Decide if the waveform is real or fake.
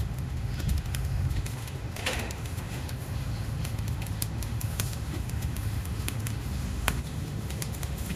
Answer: fake